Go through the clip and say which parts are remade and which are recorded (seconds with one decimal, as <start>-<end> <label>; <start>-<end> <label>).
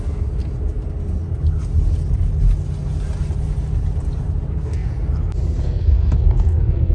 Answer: 0.0-0.4 remade; 0.4-4.5 recorded; 4.5-4.9 remade; 4.9-5.6 recorded; 5.6-6.9 remade